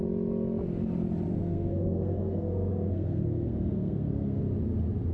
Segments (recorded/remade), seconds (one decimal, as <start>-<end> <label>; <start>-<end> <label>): 0.0-1.3 recorded; 1.3-4.4 remade; 4.4-5.1 recorded